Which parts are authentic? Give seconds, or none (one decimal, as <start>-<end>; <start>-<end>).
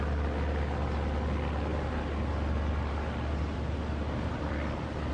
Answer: 0.0-5.1